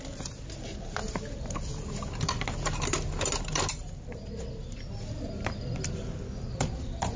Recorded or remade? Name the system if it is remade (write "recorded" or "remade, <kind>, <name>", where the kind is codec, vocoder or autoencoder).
recorded